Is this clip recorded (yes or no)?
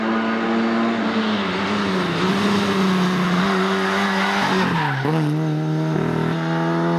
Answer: yes